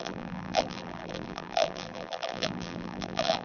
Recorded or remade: remade